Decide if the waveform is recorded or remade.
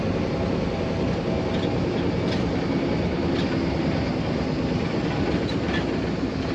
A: recorded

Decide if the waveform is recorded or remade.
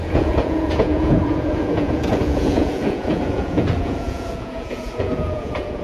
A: remade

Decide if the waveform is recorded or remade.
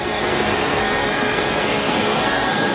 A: remade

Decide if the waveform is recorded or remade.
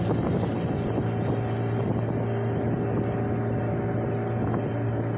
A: recorded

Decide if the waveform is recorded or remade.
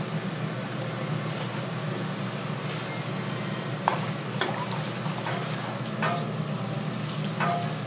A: recorded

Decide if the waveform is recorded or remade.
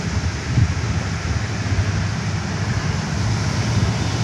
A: recorded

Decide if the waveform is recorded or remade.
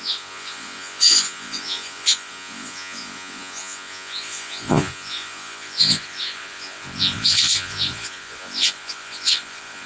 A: remade